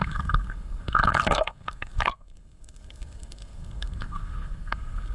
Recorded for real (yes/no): no